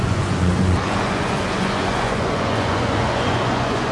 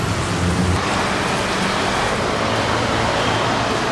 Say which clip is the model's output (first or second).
first